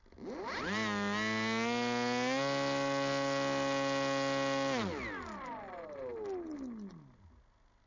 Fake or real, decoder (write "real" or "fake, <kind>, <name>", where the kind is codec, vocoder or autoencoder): real